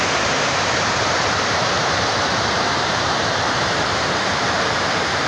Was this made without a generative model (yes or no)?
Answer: no